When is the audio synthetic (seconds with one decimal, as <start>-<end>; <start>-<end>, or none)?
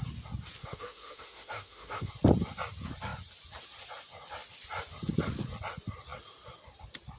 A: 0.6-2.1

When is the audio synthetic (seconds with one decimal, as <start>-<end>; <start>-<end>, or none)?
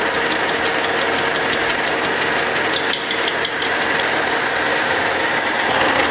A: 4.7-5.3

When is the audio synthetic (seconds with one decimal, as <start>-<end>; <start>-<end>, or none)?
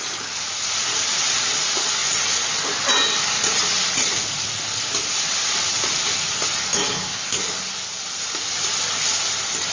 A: 6.7-7.4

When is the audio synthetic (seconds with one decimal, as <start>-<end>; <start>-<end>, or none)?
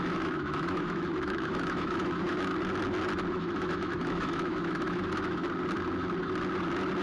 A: 0.0-2.5; 3.3-5.4